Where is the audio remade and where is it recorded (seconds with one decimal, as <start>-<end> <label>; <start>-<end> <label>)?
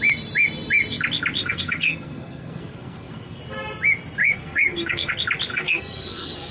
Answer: 0.0-1.4 recorded; 1.4-3.4 remade; 3.4-4.2 recorded; 4.2-5.1 remade; 5.1-5.5 recorded; 5.5-6.5 remade